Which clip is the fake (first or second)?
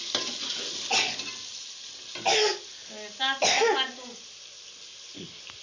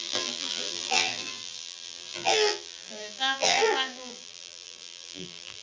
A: second